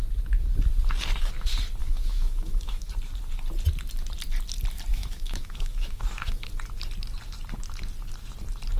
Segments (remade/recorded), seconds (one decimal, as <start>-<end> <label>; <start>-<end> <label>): 0.0-1.8 recorded; 1.8-2.9 remade; 2.9-4.9 recorded; 4.9-6.5 remade; 6.5-8.8 recorded